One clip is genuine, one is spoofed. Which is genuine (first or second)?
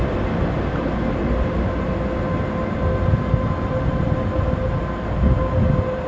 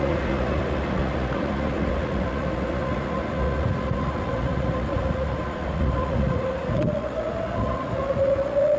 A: first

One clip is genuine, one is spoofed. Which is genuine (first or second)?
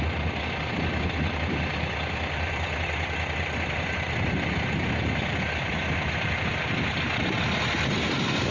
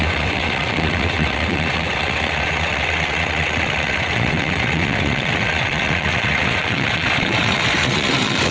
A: first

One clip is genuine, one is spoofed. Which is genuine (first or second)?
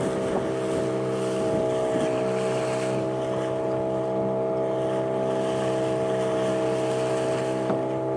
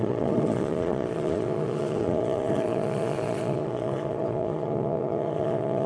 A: first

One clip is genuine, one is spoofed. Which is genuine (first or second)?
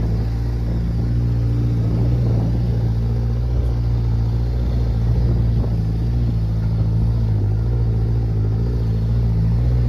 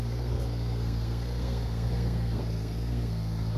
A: first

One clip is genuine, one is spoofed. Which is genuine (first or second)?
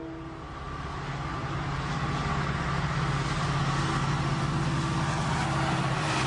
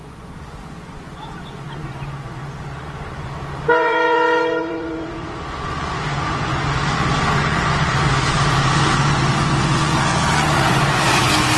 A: first